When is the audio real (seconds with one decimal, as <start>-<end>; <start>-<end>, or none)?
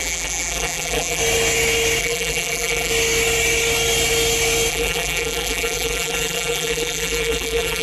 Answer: 1.2-2.0; 2.9-4.7